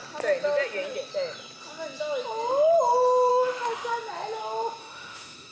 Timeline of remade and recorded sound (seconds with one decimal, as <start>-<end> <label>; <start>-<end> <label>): 0.0-3.3 recorded; 3.3-3.9 remade; 3.9-4.8 recorded; 4.8-5.5 remade

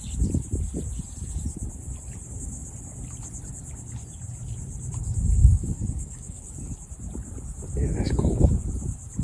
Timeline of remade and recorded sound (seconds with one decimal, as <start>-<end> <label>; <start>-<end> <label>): 0.0-5.4 recorded; 5.4-6.7 remade; 6.7-9.2 recorded

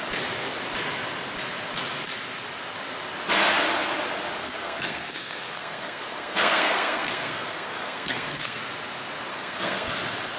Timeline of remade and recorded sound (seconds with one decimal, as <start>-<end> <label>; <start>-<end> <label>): 0.0-4.4 recorded; 4.4-8.6 remade; 8.6-9.3 recorded; 9.3-9.9 remade; 9.9-10.4 recorded